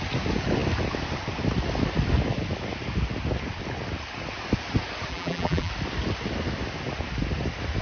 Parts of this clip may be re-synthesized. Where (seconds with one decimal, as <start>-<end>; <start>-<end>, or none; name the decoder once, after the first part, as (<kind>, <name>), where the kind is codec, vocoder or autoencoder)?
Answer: 5.1-5.7 (vocoder, BigVGAN v2)